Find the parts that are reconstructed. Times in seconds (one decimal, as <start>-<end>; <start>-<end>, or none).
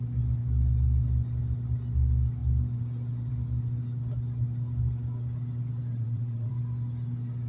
5.9-6.5